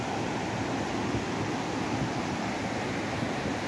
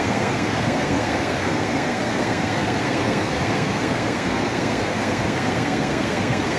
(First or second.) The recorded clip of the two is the first